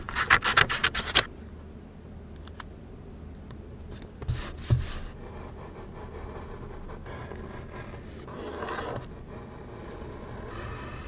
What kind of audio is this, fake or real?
real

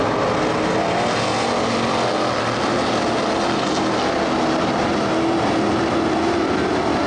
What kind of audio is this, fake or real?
real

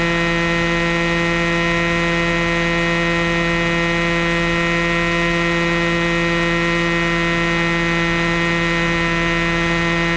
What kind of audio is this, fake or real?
real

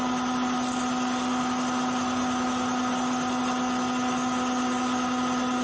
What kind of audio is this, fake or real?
real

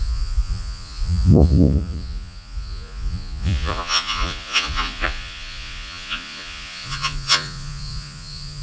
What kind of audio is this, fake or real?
fake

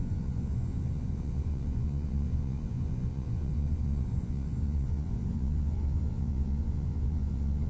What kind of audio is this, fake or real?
fake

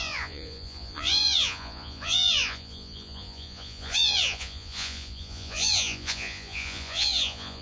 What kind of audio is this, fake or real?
fake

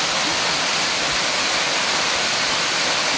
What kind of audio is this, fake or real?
real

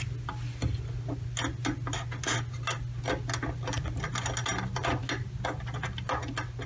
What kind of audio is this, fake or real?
real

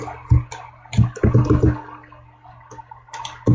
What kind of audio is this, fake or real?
real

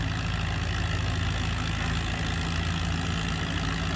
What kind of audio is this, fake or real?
real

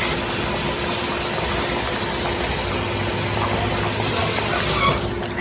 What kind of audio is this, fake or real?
real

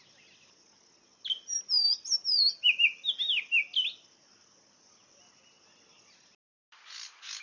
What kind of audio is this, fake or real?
real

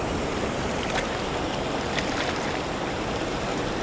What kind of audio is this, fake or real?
real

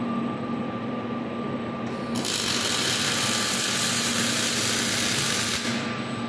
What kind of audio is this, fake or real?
real